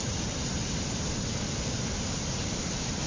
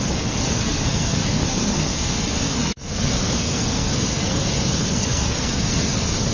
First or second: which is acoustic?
first